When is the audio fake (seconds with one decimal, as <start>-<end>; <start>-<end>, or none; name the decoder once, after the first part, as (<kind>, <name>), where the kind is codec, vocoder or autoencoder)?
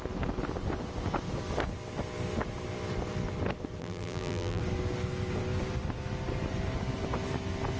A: 3.8-4.6 (vocoder, BigVGAN v2)